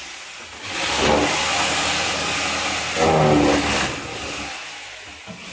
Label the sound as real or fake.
real